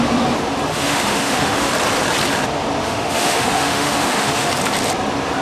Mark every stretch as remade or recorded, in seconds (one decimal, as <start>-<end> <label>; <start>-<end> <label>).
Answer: 0.0-0.7 recorded; 0.7-1.7 remade; 1.7-2.8 recorded; 2.8-4.5 remade; 4.5-5.4 recorded